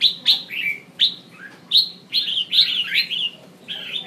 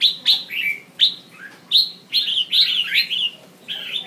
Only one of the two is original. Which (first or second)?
second